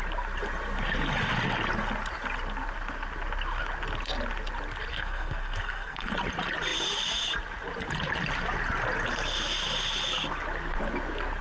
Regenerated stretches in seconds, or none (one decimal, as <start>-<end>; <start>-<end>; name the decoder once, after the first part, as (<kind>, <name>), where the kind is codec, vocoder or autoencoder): 4.9-6.1 (codec, SNAC)